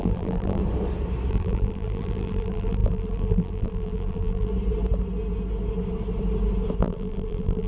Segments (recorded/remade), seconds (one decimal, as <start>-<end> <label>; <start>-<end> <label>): 0.0-0.6 remade; 0.6-1.3 recorded; 1.3-4.5 remade; 4.5-6.8 recorded; 6.8-7.7 remade